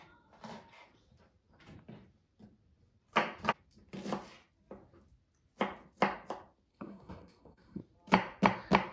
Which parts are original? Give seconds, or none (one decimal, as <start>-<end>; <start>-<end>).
0.0-6.7; 7.8-8.9